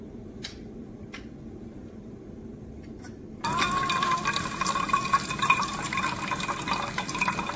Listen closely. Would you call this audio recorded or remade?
recorded